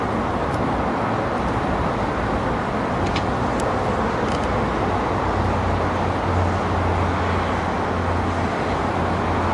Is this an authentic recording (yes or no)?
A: yes